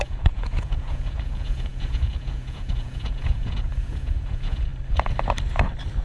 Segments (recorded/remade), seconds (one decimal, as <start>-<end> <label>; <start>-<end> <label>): 0.0-4.7 remade; 4.7-6.0 recorded